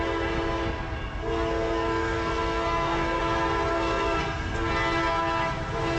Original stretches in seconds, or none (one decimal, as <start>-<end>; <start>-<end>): 0.0-1.2; 3.2-3.7; 4.7-6.0